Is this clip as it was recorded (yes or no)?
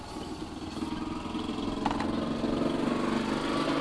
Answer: yes